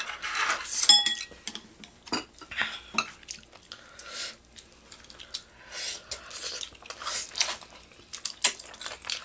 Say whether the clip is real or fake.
real